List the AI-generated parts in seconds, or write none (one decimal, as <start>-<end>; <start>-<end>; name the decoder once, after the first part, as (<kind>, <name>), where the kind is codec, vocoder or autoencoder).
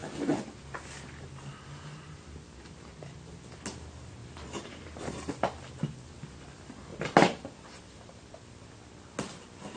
4.2-5.3 (vocoder, BigVGAN v2); 6.9-8.3